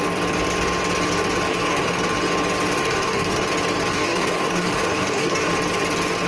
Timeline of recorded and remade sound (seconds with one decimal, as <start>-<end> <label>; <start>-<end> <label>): 0.0-1.5 recorded; 1.5-2.0 remade; 2.0-2.8 recorded; 2.8-3.5 remade; 3.5-3.9 recorded; 3.9-5.5 remade; 5.5-6.3 recorded